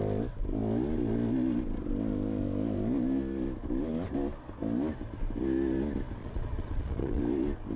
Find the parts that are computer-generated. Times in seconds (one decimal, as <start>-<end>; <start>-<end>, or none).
6.2-7.2

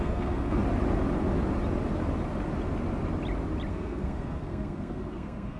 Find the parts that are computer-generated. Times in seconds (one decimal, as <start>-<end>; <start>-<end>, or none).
0.0-0.6; 3.7-5.6

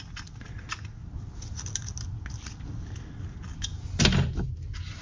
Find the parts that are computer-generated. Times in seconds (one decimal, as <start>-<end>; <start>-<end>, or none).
none

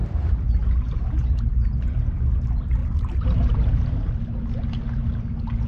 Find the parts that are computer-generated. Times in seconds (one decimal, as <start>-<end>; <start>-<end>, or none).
0.0-2.0; 2.8-3.7

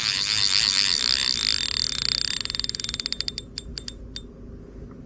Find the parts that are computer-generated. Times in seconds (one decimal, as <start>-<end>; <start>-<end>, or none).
none

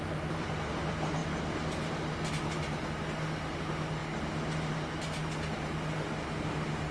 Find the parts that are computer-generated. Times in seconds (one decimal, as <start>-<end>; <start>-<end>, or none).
none

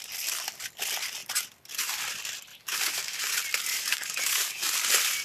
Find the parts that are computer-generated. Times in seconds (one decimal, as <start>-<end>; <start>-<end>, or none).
2.5-3.2; 3.7-4.7

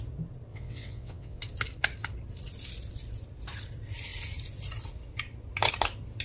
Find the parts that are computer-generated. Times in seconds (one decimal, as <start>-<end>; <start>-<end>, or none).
0.5-1.4